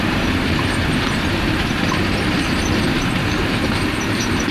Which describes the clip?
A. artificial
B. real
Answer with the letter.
A